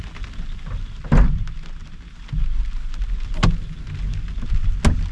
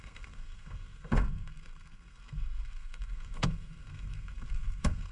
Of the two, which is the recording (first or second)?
first